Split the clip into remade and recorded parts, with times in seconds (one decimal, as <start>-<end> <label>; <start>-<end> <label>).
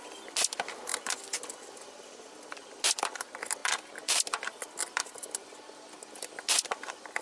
0.0-7.2 recorded